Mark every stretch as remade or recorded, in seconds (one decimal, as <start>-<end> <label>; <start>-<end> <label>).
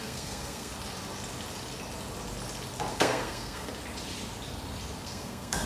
0.0-0.7 remade; 0.7-2.9 recorded; 2.9-3.7 remade; 3.7-5.0 recorded; 5.0-5.7 remade